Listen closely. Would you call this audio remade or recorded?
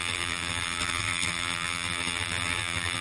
remade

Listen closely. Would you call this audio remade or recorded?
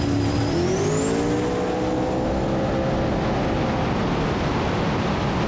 recorded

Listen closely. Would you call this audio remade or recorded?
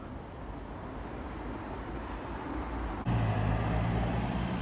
recorded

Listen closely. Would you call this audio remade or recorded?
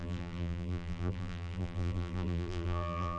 remade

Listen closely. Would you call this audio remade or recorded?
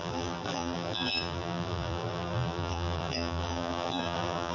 remade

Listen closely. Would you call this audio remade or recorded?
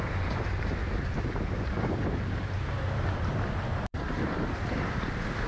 remade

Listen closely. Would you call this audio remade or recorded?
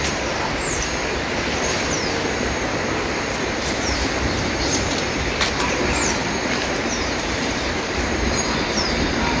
remade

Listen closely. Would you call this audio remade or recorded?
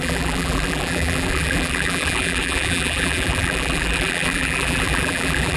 remade